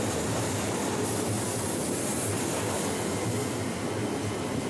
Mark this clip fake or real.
real